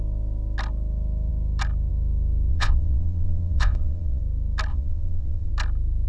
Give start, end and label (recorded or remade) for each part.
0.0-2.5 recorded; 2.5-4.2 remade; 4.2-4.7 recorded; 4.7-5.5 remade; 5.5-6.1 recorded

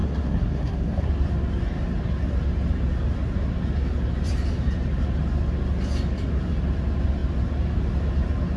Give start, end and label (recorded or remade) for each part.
0.0-1.1 remade; 1.1-8.6 recorded

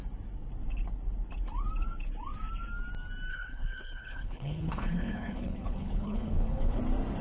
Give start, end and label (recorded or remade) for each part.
0.0-3.3 recorded; 3.3-6.8 remade; 6.8-7.2 recorded

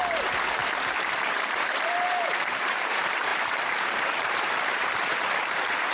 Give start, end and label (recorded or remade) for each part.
0.0-0.6 remade; 0.6-1.9 recorded; 1.9-5.9 remade

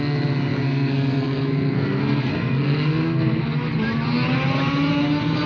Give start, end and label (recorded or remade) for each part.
0.0-0.5 recorded; 0.5-3.4 remade; 3.4-5.5 recorded

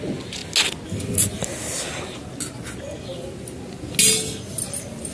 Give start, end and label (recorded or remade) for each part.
0.0-5.1 recorded

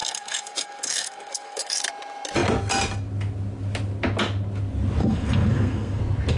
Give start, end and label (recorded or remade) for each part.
0.0-1.8 remade; 1.8-5.0 recorded; 5.0-6.0 remade; 6.0-6.4 recorded

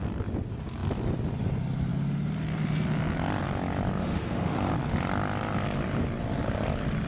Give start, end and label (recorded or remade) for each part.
0.0-4.0 recorded; 4.0-4.7 remade; 4.7-7.1 recorded